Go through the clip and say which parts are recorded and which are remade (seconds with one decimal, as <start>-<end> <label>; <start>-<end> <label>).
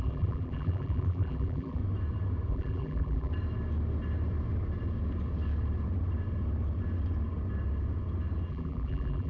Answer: 0.0-1.8 remade; 1.8-2.5 recorded; 2.5-3.3 remade; 3.3-8.5 recorded; 8.5-9.3 remade